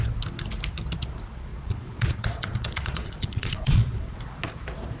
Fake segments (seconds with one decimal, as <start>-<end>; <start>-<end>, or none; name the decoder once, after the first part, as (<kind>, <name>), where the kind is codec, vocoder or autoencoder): 1.5-4.2 (vocoder, Vocos)